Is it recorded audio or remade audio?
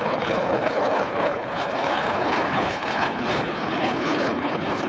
remade